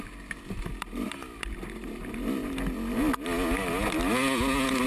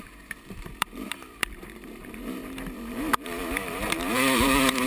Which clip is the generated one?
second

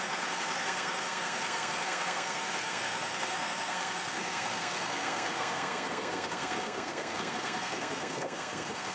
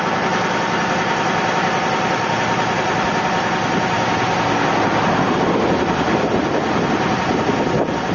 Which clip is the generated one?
first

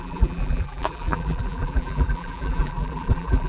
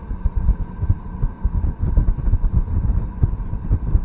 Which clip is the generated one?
first